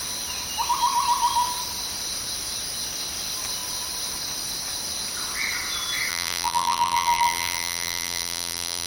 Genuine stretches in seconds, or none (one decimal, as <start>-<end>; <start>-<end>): 0.0-6.1